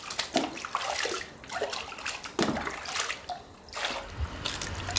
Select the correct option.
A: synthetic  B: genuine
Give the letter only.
B